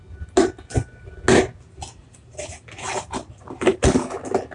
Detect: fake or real real